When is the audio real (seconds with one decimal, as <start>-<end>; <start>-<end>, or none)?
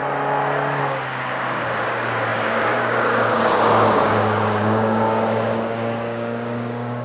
0.0-0.8